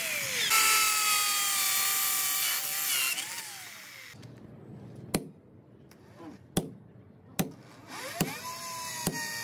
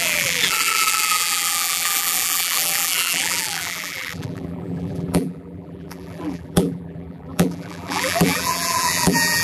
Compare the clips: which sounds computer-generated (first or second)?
second